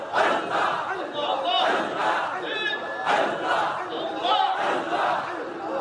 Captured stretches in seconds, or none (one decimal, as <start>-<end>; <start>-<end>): 0.0-5.8